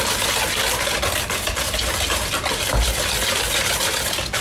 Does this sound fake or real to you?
real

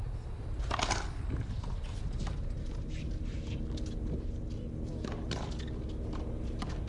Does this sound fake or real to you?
real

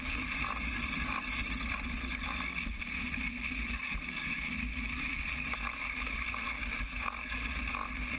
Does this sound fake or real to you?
real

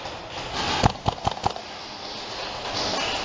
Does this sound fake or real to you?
real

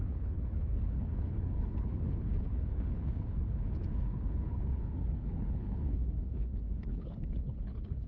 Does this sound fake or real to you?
fake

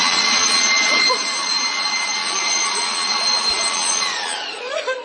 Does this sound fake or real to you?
fake